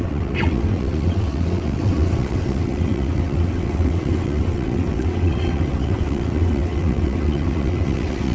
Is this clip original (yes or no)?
no